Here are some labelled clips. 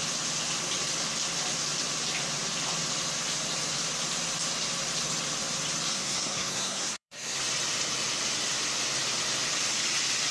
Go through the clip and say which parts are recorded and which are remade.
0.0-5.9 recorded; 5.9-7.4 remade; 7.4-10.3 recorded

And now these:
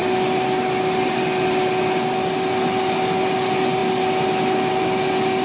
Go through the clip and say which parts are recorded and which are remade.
0.0-5.4 recorded

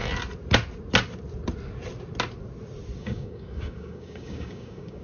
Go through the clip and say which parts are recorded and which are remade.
0.0-3.0 recorded; 3.0-5.0 remade

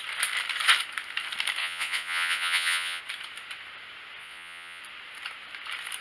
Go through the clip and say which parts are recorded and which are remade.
0.0-1.6 recorded; 1.6-3.0 remade; 3.0-4.2 recorded; 4.2-4.8 remade; 4.8-6.0 recorded